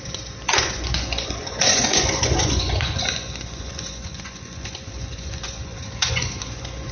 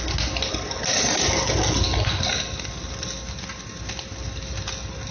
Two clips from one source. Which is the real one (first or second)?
second